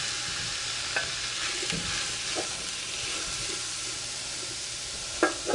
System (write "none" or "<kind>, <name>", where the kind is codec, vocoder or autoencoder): none